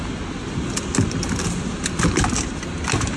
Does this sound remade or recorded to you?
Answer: recorded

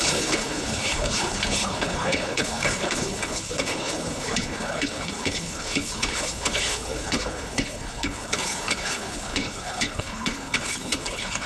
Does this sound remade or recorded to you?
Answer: remade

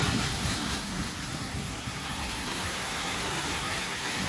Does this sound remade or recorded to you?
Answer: remade